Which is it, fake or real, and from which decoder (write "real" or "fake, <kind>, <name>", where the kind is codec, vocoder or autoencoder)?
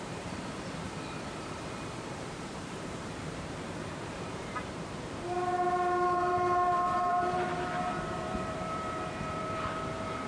fake, vocoder, BigVGAN v2